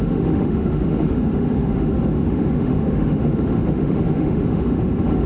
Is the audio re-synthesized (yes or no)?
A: yes